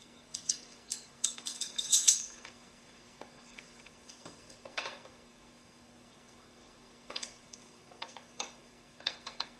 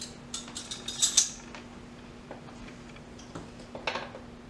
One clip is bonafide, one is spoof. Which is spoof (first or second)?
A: first